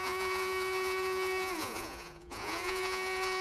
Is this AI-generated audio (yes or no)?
yes